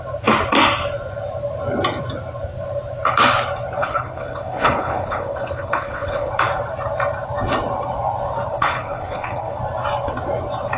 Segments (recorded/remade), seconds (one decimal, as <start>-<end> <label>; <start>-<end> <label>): 0.0-3.8 recorded; 3.8-6.3 remade; 6.3-8.5 recorded; 8.5-9.6 remade; 9.6-10.8 recorded